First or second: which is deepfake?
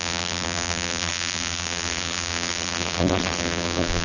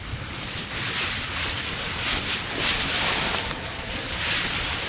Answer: first